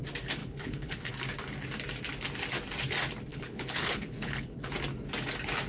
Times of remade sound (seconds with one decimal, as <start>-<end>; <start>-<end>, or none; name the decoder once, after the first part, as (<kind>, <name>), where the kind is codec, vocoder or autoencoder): 0.4-1.1 (codec, HILCodec); 3.3-4.7